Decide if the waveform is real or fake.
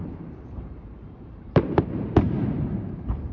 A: fake